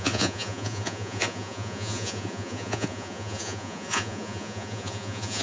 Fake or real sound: fake